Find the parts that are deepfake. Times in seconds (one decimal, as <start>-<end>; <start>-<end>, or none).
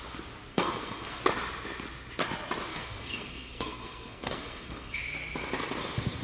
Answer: 0.5-1.2; 2.7-5.0